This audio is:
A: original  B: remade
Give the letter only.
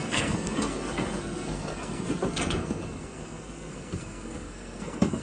B